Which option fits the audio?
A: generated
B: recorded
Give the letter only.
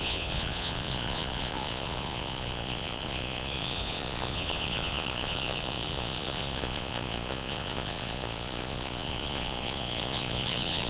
A